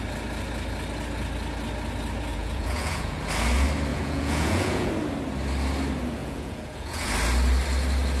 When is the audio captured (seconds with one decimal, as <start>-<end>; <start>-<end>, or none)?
0.0-2.3; 3.2-3.9; 4.9-6.2; 7.1-8.2